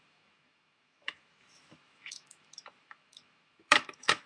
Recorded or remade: remade